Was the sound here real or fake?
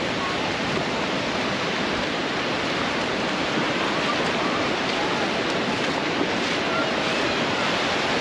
real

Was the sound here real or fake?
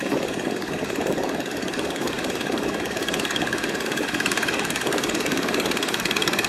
fake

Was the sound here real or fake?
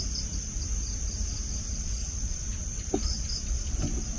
real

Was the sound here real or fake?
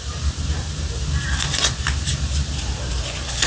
real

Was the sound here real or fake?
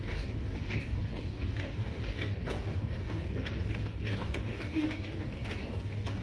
fake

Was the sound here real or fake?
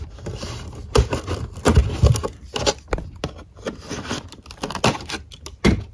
real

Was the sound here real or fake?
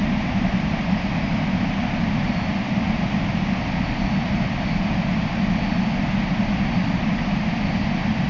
real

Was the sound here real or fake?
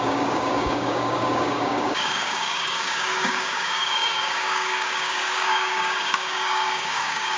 fake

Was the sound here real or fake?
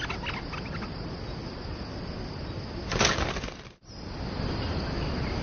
real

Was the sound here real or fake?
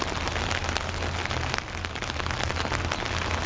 real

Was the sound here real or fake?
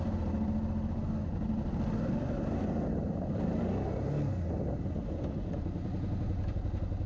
real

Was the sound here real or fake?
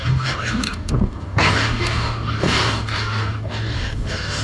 fake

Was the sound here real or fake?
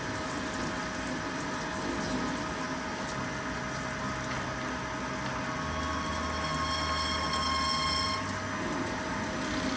real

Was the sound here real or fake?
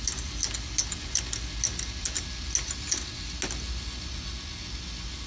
real